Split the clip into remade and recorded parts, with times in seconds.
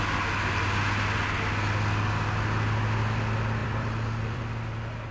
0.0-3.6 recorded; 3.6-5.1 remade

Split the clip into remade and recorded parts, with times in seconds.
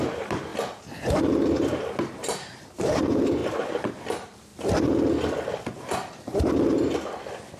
0.0-0.5 remade; 0.5-1.7 recorded; 1.7-4.5 remade; 4.5-7.6 recorded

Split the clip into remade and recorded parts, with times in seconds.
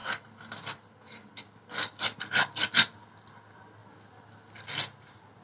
0.0-1.3 remade; 1.3-3.8 recorded; 3.8-4.7 remade; 4.7-5.4 recorded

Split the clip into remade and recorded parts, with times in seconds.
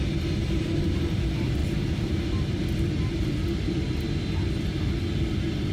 0.0-0.4 recorded; 0.4-1.2 remade; 1.2-1.6 recorded; 1.6-2.6 remade; 2.6-5.7 recorded